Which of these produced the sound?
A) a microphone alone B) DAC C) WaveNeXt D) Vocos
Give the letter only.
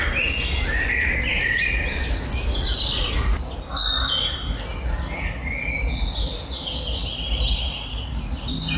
A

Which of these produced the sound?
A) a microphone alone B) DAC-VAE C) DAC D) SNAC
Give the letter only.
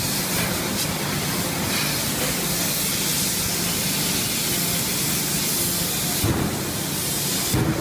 A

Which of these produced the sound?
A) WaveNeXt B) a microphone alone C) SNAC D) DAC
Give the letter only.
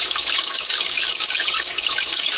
D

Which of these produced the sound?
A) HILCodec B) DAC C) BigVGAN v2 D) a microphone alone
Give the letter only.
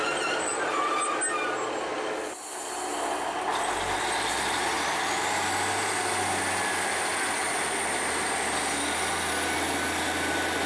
D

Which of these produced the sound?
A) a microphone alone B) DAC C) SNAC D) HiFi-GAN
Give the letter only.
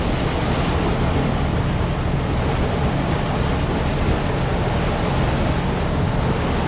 A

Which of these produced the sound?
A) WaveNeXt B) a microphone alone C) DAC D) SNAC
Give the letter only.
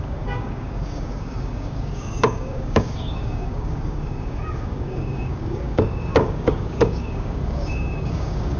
C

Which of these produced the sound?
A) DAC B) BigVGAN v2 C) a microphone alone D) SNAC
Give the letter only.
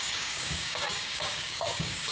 A